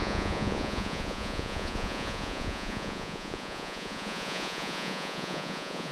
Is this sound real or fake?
fake